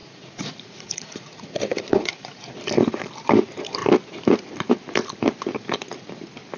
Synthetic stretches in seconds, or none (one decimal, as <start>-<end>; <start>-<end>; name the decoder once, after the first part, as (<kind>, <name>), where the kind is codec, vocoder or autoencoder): 0.0-2.5 (vocoder, Vocos)